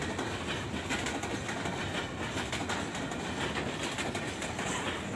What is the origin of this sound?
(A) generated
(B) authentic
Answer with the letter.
B